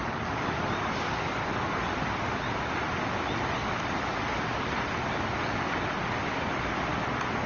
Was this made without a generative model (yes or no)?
yes